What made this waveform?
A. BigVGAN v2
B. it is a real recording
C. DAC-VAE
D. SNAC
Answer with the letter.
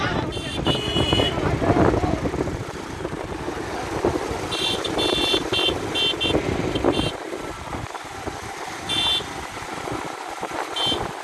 B